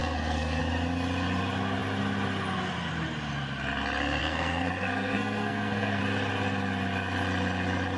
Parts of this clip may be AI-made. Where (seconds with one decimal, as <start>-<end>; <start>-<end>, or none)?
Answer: 0.0-0.6; 4.2-6.0